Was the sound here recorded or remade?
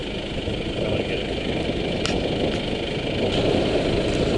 recorded